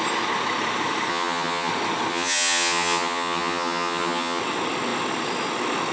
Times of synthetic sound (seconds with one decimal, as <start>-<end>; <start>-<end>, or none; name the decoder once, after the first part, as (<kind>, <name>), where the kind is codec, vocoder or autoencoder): 1.1-1.7 (vocoder, HiFi-GAN); 2.1-4.4

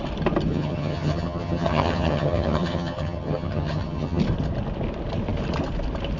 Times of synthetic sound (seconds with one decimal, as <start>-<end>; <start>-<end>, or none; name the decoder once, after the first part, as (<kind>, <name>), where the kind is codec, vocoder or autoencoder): 0.5-4.2 (vocoder, HiFi-GAN)

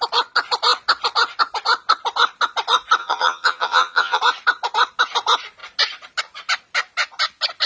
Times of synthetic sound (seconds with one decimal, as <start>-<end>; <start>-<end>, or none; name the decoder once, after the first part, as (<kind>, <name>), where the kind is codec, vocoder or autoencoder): 3.0-4.2 (vocoder, HiFi-GAN)

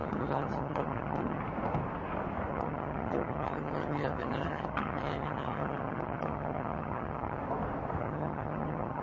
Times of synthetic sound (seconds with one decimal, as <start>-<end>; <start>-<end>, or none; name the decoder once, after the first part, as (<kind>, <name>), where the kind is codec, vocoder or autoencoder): 0.0-1.4 (vocoder, HiFi-GAN); 2.5-7.4; 8.0-9.0

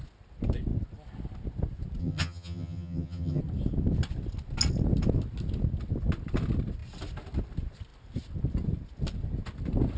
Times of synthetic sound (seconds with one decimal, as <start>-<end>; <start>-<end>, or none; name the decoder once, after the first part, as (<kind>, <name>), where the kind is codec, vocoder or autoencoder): 2.0-3.4 (vocoder, HiFi-GAN)

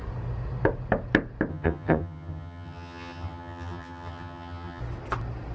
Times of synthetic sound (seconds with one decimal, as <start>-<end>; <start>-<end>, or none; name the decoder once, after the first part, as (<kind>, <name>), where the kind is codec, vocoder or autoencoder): 1.5-4.8 (vocoder, HiFi-GAN)